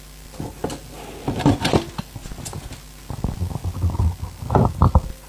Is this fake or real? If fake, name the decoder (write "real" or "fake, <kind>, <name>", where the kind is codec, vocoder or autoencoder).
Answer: real